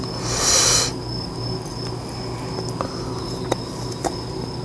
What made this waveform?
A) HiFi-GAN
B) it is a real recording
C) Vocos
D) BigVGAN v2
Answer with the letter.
B